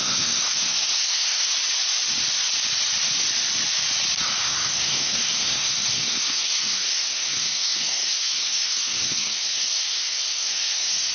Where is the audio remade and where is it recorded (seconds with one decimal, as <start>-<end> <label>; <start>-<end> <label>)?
0.0-1.5 remade; 1.5-4.4 recorded; 4.4-11.1 remade